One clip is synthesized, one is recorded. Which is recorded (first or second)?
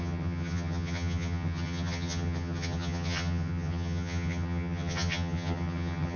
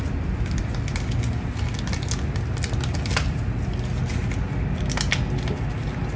second